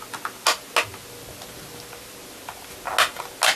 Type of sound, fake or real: real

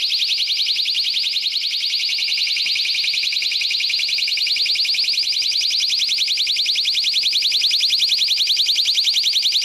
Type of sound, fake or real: real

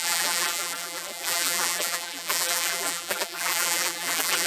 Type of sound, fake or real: fake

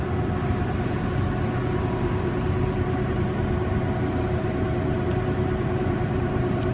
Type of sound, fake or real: fake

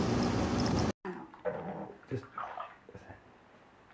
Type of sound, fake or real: real